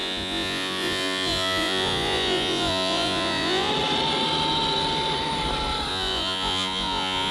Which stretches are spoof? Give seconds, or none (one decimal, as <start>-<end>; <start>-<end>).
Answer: 0.0-3.7; 5.9-7.3